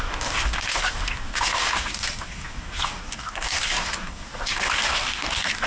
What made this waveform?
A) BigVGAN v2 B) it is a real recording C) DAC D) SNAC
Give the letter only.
C